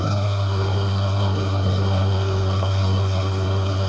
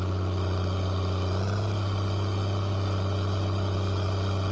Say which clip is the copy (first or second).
first